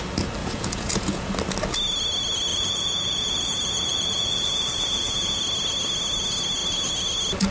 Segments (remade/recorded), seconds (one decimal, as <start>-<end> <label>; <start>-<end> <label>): 0.0-0.4 recorded; 0.4-1.3 remade; 1.3-2.5 recorded; 2.5-5.4 remade; 5.4-7.5 recorded